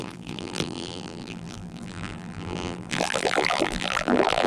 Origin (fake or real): fake